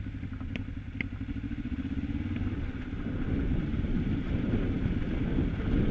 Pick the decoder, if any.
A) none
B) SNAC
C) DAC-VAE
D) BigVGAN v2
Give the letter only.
A